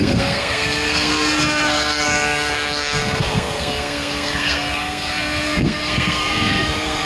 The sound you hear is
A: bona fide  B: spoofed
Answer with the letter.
B